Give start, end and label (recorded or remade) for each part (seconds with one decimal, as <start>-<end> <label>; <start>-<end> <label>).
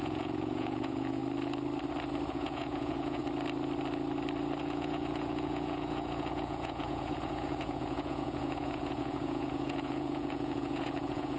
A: 0.0-1.2 remade; 1.2-2.3 recorded; 2.3-3.2 remade; 3.2-4.6 recorded; 4.6-11.4 remade